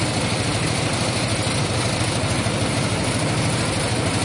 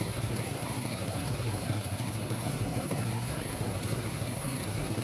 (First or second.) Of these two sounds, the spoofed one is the second